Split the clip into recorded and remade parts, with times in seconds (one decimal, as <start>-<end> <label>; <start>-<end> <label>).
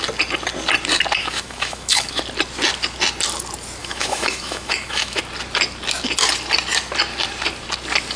0.0-1.2 recorded; 1.2-2.2 remade; 2.2-3.8 recorded; 3.8-5.2 remade; 5.2-8.2 recorded